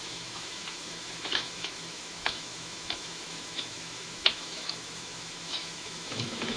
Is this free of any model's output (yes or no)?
no